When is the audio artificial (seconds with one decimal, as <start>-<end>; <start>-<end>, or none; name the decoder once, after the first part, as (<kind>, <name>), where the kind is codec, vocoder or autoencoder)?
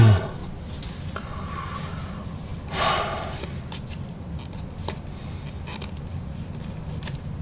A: none